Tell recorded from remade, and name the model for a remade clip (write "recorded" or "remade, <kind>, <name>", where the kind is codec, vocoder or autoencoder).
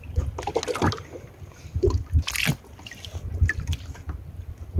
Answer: recorded